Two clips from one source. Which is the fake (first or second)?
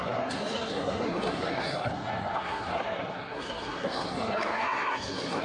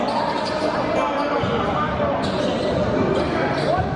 first